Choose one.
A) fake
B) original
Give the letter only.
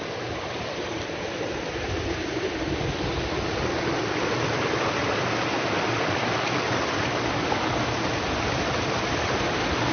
B